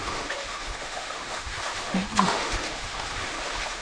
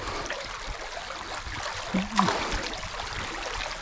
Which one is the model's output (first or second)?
first